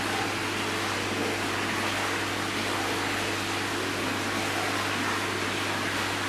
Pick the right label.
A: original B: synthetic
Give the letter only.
A